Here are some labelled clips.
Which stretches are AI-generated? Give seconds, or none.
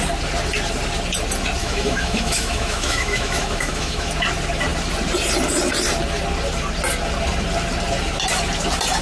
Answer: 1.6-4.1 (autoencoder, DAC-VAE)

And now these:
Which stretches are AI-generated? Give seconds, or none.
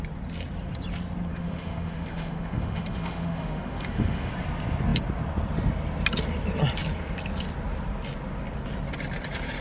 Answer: 1.3-4.3 (autoencoder, DAC-VAE)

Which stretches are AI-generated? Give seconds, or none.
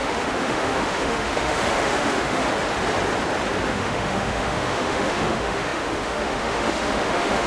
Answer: 0.0-2.4 (autoencoder, DAC-VAE); 3.6-7.5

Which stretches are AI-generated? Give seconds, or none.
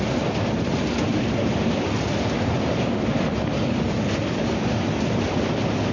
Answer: none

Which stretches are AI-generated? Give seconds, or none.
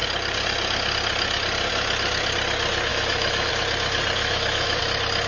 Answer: 2.9-3.5 (autoencoder, DAC-VAE); 4.2-4.8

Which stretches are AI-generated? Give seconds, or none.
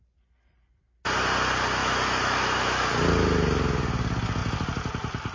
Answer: 1.8-2.9 (autoencoder, DAC-VAE)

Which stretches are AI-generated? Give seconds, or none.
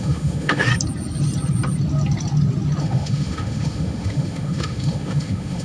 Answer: 0.0-0.7 (autoencoder, DAC-VAE); 2.8-5.6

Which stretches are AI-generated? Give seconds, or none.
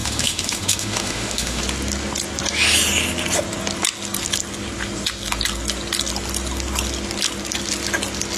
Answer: 0.0-1.6 (autoencoder, DAC-VAE)